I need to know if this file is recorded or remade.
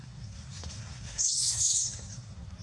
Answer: remade